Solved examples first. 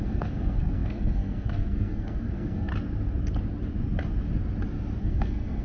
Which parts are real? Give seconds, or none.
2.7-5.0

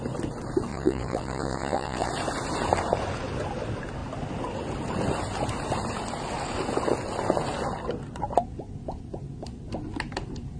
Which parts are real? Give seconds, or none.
0.0-0.7; 2.1-10.6

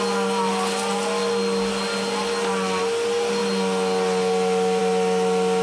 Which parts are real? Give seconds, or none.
0.0-5.6

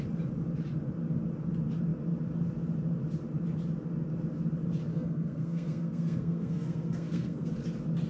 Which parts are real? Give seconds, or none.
0.0-4.9; 7.5-8.1

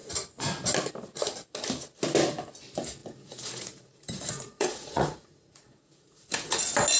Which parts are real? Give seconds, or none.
0.0-3.0; 6.6-7.0

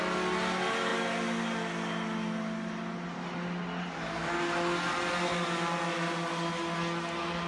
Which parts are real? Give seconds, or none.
0.0-7.5